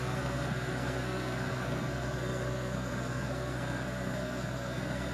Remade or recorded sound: remade